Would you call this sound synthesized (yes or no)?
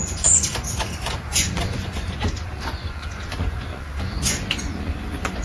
yes